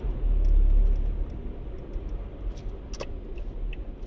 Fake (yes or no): no